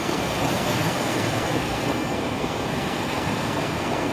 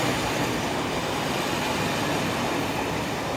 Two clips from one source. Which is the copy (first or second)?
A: first